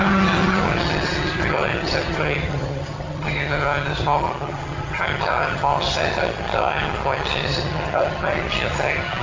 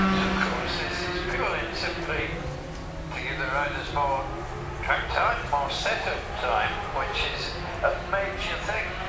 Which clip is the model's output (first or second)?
first